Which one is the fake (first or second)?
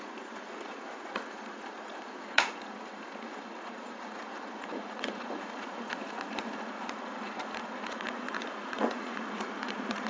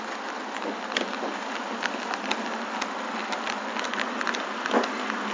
first